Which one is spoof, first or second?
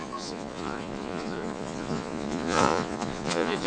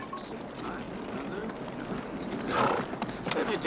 first